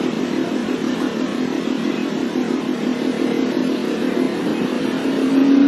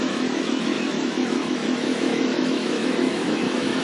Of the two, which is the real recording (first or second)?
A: first